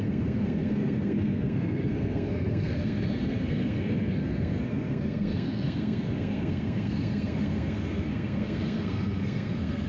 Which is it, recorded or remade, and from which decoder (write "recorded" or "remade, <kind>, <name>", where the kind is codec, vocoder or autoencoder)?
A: remade, codec, SNAC